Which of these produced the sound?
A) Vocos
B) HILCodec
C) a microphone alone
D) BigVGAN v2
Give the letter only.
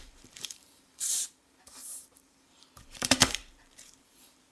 D